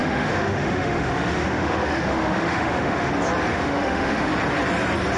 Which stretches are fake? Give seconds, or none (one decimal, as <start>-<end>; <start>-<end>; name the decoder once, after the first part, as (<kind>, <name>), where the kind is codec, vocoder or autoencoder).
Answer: 0.0-3.1 (autoencoder, DAC-VAE); 3.5-4.3